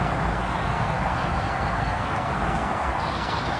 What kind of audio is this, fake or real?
fake